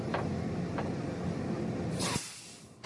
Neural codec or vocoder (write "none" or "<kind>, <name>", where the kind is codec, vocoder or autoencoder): none